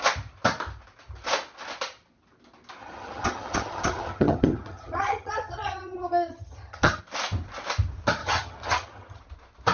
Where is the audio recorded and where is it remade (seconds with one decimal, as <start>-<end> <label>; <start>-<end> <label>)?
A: 0.0-2.8 recorded; 2.8-7.0 remade; 7.0-8.2 recorded; 8.2-9.2 remade; 9.2-9.7 recorded